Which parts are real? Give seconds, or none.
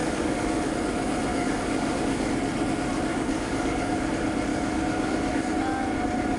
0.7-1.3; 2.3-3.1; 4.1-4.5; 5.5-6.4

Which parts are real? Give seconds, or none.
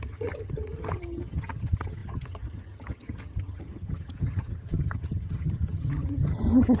none